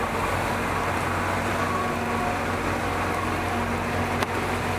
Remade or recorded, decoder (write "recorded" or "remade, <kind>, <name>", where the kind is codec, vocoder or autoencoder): recorded